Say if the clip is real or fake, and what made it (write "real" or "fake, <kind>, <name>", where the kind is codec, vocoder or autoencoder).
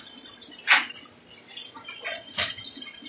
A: real